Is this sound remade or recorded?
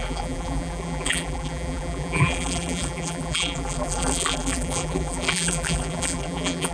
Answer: remade